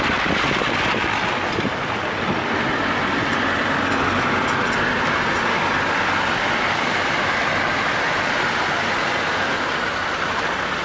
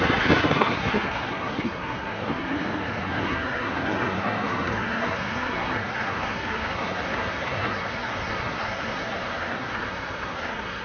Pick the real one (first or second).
first